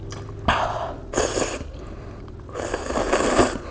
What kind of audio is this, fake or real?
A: real